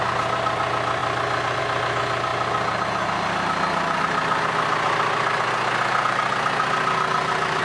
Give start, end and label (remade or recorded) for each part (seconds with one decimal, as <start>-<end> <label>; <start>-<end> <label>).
0.0-7.6 recorded